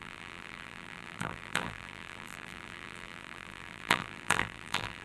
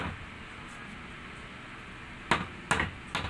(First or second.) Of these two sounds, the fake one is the first